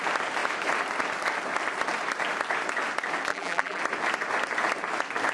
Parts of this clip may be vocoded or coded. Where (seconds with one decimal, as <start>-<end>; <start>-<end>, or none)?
3.3-3.8